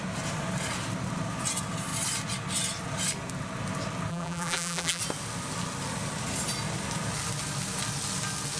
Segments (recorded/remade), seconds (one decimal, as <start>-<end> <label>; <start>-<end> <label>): 0.0-4.1 recorded; 4.1-5.0 remade; 5.0-8.6 recorded

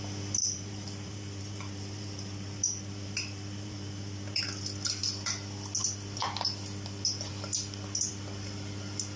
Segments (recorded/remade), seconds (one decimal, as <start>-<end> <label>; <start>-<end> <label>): 0.0-0.4 recorded; 0.4-4.4 remade; 4.4-9.2 recorded

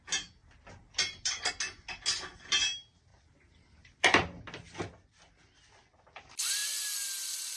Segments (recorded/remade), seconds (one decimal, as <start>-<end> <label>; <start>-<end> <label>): 0.0-0.4 recorded; 0.4-1.5 remade; 1.5-3.1 recorded; 3.1-4.4 remade; 4.4-7.6 recorded

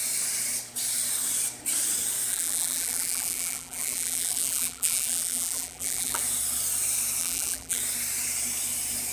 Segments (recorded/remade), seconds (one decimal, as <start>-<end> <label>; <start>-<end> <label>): 0.0-2.3 recorded; 2.3-6.2 remade; 6.2-7.2 recorded; 7.2-7.8 remade; 7.8-9.1 recorded

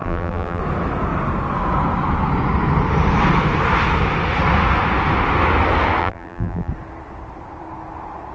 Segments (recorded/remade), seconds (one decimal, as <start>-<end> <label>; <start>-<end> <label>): 0.0-0.6 remade; 0.6-6.0 recorded; 6.0-6.7 remade; 6.7-8.3 recorded

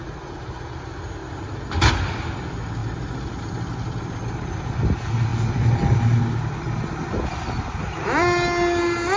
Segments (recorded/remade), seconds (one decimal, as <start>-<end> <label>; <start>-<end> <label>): 0.0-2.8 recorded; 2.8-3.4 remade; 3.4-5.3 recorded; 5.3-6.2 remade; 6.2-9.2 recorded